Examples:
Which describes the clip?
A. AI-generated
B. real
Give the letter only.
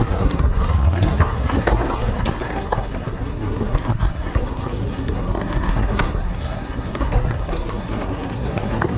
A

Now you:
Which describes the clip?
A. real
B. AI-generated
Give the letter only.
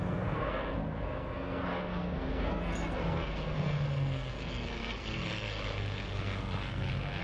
B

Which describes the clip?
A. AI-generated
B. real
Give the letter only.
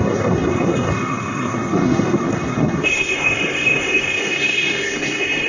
A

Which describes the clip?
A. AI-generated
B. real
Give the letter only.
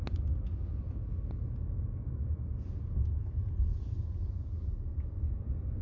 B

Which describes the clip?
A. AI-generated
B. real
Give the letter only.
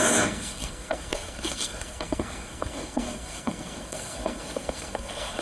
A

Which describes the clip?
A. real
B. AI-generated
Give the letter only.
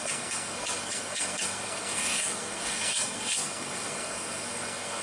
B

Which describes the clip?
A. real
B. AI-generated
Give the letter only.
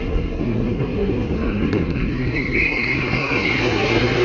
B